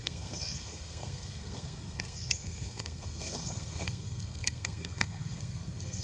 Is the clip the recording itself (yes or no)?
no